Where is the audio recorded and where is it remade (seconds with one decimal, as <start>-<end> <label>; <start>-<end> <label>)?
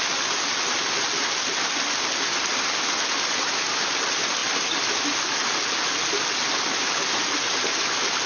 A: 0.0-8.3 recorded